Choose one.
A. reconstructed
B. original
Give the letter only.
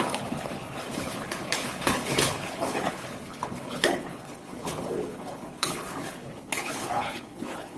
A